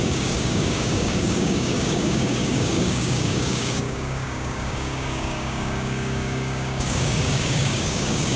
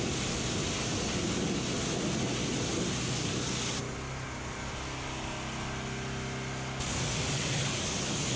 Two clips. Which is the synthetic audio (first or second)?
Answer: first